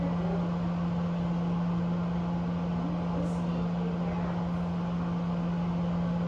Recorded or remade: recorded